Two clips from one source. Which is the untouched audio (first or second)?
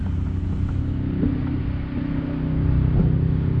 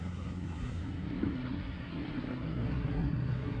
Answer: first